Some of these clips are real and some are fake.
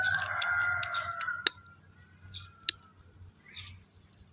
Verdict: real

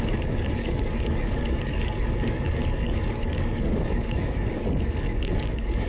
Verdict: fake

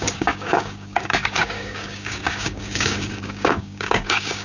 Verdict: fake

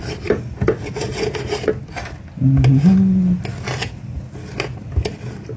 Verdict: real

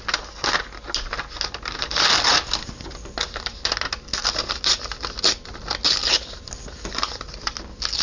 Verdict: real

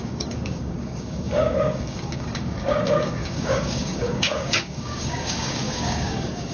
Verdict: fake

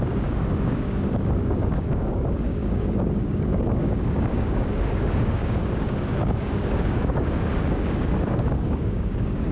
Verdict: fake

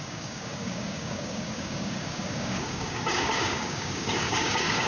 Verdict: fake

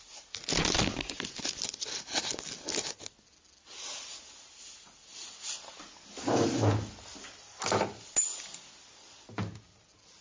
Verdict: real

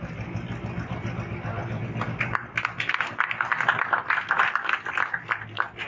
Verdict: real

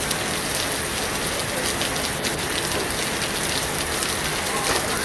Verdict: real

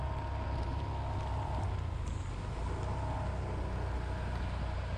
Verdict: real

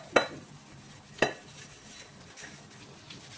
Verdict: real